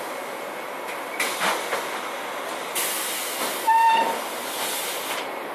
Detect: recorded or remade recorded